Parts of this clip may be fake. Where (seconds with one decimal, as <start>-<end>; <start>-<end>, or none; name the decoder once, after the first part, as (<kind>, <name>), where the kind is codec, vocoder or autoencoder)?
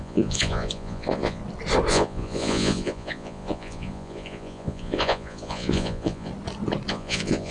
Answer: 0.0-1.4 (vocoder, Vocos); 1.9-6.3; 6.9-7.5